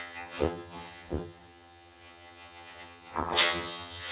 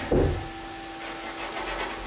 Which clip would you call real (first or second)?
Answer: second